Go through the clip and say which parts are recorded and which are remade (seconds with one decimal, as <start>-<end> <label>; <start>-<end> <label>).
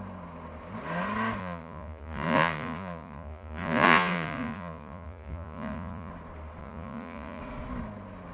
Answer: 0.0-1.4 recorded; 1.4-6.1 remade; 6.1-6.6 recorded; 6.6-7.4 remade; 7.4-8.3 recorded